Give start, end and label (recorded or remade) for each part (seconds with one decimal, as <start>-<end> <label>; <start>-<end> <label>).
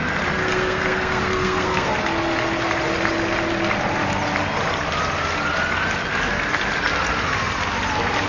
0.0-0.4 recorded; 0.4-1.9 remade; 1.9-8.3 recorded